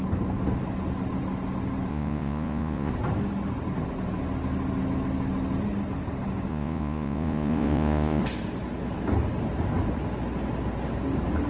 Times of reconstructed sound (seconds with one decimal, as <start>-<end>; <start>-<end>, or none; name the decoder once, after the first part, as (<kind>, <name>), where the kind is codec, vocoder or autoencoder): 1.9-2.9 (vocoder, Vocos); 6.5-8.2

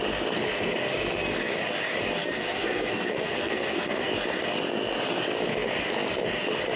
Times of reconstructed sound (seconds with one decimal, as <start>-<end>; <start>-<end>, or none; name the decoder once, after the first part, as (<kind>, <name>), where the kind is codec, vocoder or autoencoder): 2.2-4.1 (codec, SNAC)